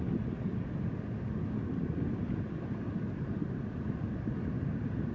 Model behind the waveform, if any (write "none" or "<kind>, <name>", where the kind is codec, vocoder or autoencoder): none